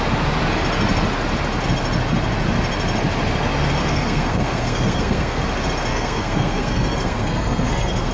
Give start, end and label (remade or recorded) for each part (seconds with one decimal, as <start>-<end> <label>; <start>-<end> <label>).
0.0-3.8 recorded; 3.8-5.4 remade; 5.4-5.9 recorded; 5.9-8.1 remade